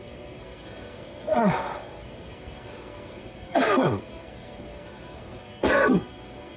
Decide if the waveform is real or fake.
fake